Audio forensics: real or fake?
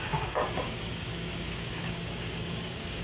fake